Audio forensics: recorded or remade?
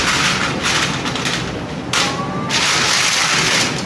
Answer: recorded